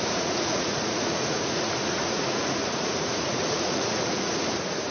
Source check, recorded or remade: remade